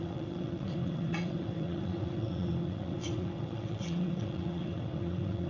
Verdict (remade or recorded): remade